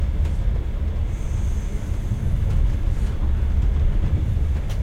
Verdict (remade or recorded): recorded